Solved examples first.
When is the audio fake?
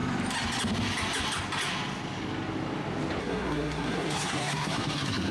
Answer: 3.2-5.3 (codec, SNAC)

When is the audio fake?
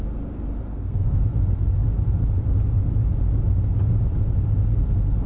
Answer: 0.7-1.2 (codec, SNAC)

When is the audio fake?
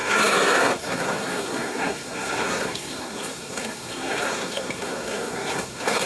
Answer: 0.0-6.1 (codec, SNAC)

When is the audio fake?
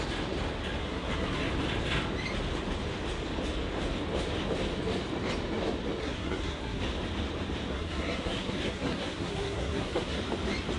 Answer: 0.8-1.5 (codec, SNAC); 6.0-6.8; 7.7-10.2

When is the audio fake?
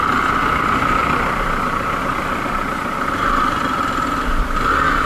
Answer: none